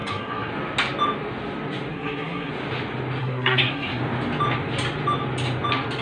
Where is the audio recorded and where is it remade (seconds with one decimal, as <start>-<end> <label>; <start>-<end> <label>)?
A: 0.0-0.5 remade; 0.5-1.9 recorded; 1.9-2.5 remade; 2.5-3.2 recorded; 3.2-4.0 remade; 4.0-6.0 recorded